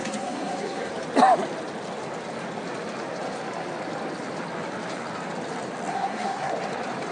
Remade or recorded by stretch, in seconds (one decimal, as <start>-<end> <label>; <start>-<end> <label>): 0.0-0.9 remade; 0.9-5.9 recorded; 5.9-6.5 remade; 6.5-7.1 recorded